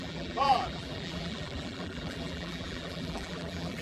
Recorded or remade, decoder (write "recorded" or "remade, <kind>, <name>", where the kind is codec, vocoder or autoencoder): remade, vocoder, BigVGAN v2